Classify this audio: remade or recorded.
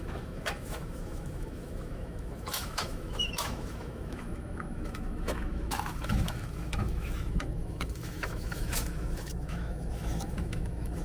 remade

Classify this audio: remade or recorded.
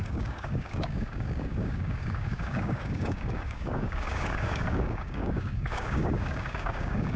remade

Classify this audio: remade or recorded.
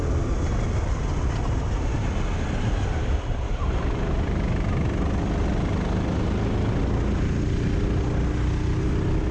recorded